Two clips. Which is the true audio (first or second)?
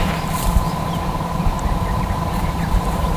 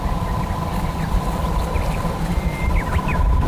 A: second